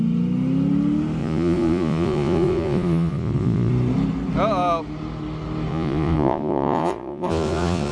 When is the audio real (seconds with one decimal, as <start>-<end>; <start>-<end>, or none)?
0.0-1.2; 3.7-5.7